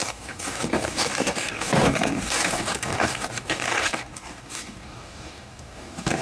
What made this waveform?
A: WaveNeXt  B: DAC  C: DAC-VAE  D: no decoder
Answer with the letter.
B